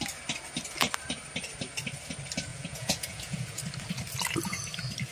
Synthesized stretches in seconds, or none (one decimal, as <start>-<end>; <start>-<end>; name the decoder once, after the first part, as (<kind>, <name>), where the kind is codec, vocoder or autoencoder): 2.5-3.6 (vocoder, Vocos)